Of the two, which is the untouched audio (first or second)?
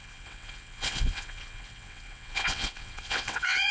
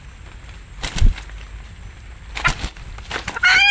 second